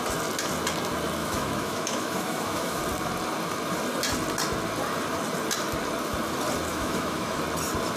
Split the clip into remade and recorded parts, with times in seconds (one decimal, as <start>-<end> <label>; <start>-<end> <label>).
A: 0.0-1.2 recorded; 1.2-2.8 remade; 2.8-6.7 recorded; 6.7-7.4 remade; 7.4-8.0 recorded